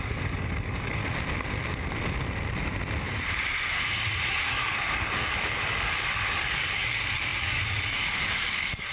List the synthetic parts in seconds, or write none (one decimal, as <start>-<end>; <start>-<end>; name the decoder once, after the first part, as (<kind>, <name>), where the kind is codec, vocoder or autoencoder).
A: 0.0-1.0 (codec, DAC); 4.3-8.9